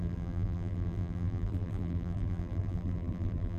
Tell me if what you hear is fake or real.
fake